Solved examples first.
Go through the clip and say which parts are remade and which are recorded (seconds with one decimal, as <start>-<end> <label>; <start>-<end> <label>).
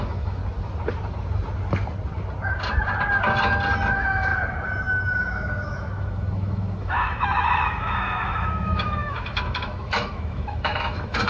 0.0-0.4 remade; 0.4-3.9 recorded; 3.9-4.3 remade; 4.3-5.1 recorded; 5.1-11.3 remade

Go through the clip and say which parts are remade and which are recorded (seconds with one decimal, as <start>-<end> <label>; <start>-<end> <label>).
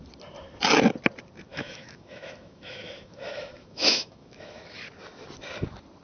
0.0-1.5 recorded; 1.5-4.8 remade; 4.8-6.0 recorded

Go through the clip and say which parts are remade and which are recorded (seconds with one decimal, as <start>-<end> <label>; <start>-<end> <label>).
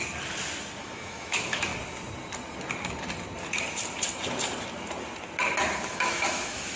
0.0-0.8 recorded; 0.8-1.7 remade; 1.7-5.8 recorded; 5.8-6.8 remade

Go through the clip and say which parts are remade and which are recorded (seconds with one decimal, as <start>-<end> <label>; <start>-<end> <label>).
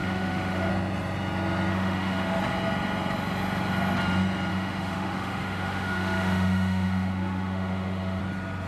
0.0-0.7 remade; 0.7-1.7 recorded; 1.7-2.4 remade; 2.4-4.5 recorded; 4.5-8.2 remade; 8.2-8.7 recorded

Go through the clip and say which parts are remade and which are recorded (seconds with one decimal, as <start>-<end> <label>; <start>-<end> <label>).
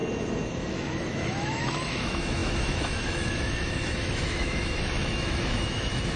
0.0-0.7 recorded; 0.7-6.2 remade